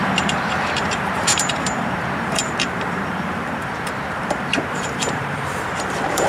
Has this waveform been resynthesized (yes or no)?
yes